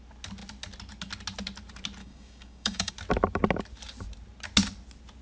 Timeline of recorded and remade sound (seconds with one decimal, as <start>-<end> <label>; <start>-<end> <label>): 0.0-2.0 recorded; 2.0-2.9 remade; 2.9-5.2 recorded